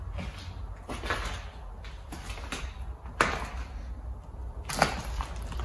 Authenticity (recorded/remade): recorded